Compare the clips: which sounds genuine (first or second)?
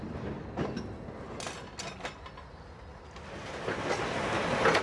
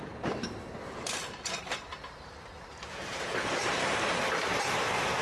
first